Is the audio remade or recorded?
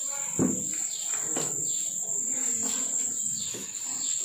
recorded